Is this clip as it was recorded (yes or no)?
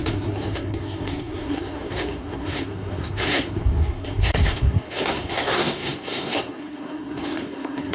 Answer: no